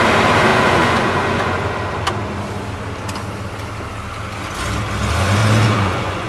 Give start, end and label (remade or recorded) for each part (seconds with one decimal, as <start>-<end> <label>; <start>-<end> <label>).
0.0-0.5 recorded; 0.5-1.7 remade; 1.7-5.4 recorded; 5.4-6.3 remade